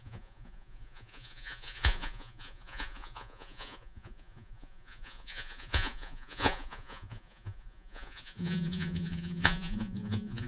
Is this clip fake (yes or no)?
yes